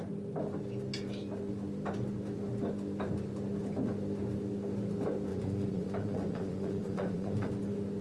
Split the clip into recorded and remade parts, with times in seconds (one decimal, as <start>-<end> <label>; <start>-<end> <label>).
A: 0.0-5.3 recorded; 5.3-7.5 remade; 7.5-8.0 recorded